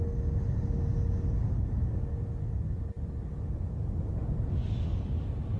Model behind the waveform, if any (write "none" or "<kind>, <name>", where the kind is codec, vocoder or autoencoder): none